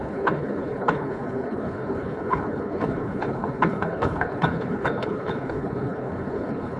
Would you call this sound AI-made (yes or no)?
yes